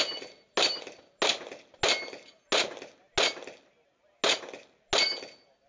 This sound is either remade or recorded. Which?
recorded